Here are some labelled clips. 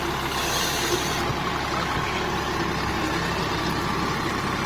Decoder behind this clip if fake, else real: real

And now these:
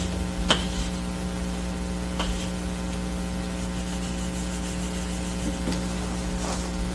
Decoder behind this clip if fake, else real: real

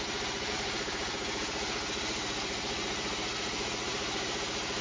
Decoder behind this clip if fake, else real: fake, vocoder, Vocos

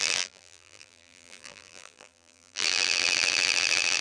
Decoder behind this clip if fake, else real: fake, vocoder, BigVGAN v2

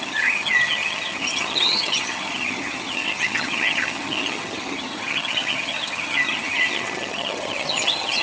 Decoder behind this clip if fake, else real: fake, vocoder, HiFi-GAN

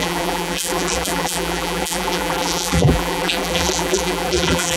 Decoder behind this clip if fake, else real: fake, vocoder, BigVGAN v2